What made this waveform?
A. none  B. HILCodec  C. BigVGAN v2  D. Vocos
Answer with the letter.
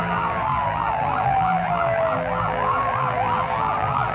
C